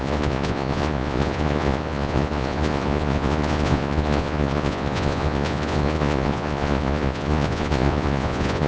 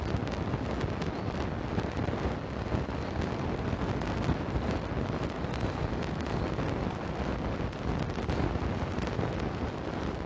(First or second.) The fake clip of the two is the first